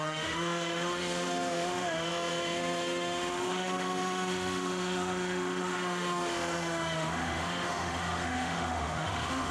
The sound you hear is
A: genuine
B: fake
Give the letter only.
B